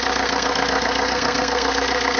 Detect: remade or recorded remade